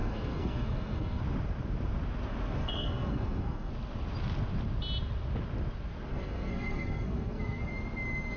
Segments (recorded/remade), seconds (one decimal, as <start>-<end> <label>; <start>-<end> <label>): 0.0-1.2 remade; 1.2-2.6 recorded; 2.6-3.7 remade; 3.7-6.1 recorded; 6.1-7.7 remade; 7.7-8.4 recorded